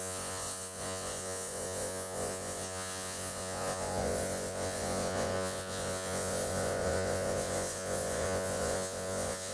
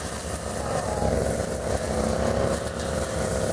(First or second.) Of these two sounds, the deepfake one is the first